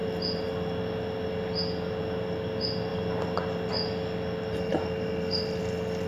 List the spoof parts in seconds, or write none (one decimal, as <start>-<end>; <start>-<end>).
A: 0.0-0.5; 2.9-3.7; 4.7-5.6